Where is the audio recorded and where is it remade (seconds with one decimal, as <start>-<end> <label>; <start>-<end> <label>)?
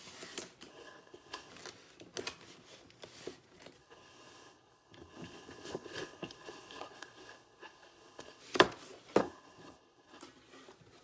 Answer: 0.0-0.7 recorded; 0.7-1.5 remade; 1.5-3.8 recorded; 3.8-8.4 remade; 8.4-9.2 recorded; 9.2-10.2 remade; 10.2-11.0 recorded